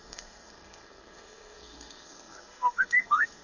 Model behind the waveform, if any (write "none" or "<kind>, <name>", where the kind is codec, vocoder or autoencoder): codec, SNAC